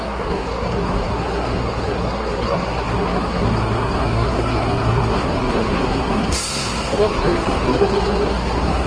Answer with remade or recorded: remade